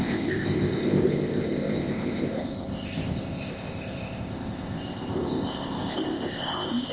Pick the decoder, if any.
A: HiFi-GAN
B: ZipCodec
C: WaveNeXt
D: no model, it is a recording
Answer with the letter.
B